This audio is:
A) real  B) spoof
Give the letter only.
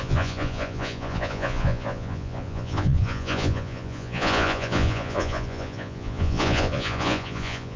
B